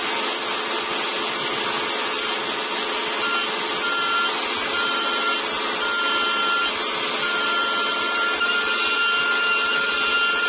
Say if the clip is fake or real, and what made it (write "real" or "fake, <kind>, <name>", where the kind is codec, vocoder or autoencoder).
real